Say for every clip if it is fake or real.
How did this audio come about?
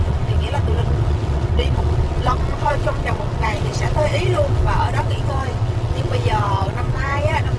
fake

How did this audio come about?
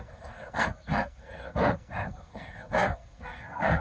fake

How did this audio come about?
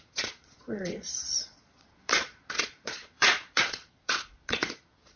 fake